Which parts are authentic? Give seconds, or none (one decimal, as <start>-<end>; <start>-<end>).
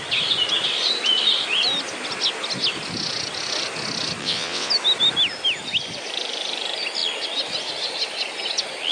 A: 0.0-4.2; 4.7-8.9